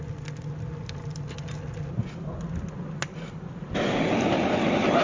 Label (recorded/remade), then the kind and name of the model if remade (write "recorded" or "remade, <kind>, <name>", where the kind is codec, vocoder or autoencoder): recorded